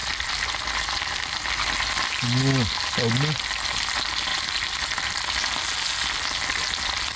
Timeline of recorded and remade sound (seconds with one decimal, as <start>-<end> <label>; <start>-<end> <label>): 0.0-7.2 recorded